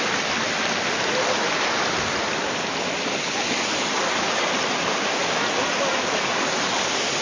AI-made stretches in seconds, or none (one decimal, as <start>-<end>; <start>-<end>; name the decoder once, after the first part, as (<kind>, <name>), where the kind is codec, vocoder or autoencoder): none

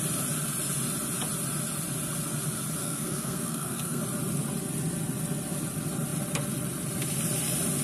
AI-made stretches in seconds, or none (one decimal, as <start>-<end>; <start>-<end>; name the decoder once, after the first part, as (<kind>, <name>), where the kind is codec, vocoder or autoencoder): 2.8-4.0 (codec, SNAC)

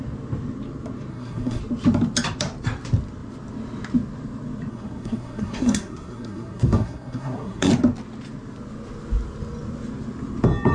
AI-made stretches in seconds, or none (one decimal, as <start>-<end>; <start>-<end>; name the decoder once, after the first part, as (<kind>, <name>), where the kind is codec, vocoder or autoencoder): 1.1-1.6 (codec, SNAC); 4.7-7.7

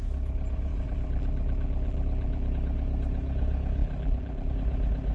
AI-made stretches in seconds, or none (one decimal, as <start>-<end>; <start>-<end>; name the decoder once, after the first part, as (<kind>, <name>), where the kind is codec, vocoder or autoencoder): 0.7-2.5 (vocoder, BigVGAN v2); 3.8-4.5